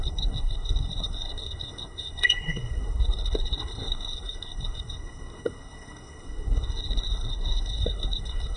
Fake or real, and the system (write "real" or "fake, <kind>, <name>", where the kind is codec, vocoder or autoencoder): fake, codec, SNAC